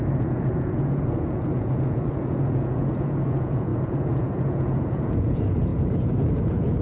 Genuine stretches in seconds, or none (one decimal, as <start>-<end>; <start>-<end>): none